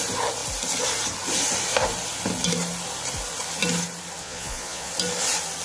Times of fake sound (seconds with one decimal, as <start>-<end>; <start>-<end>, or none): 4.2-4.9